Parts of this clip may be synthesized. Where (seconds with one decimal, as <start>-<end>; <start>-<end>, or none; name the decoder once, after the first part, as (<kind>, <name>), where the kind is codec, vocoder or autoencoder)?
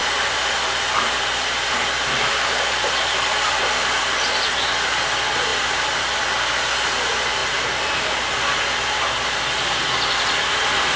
0.0-4.5 (vocoder, BigVGAN v2); 5.5-6.3